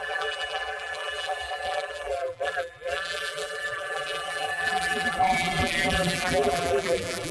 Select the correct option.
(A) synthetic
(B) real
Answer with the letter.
A